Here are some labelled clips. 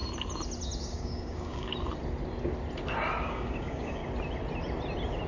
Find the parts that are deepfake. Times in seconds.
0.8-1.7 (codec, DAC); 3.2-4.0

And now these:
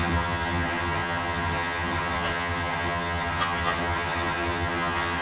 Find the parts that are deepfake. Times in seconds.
0.0-5.2 (vocoder, HiFi-GAN)

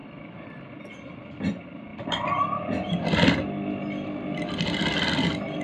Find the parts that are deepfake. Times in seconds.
none

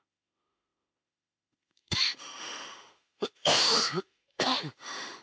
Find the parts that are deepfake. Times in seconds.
0.0-5.2 (autoencoder, DAC-VAE)

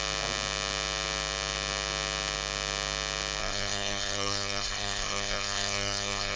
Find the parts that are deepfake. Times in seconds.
3.4-6.4 (codec, SNAC)

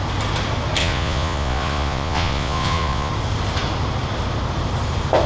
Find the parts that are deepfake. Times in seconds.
0.8-3.1 (vocoder, Vocos)

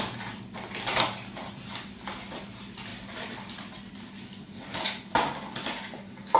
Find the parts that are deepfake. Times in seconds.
none

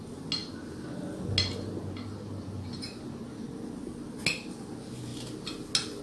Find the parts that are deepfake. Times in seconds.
none